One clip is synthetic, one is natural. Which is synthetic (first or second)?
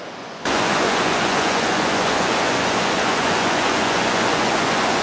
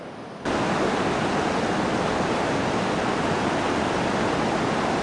first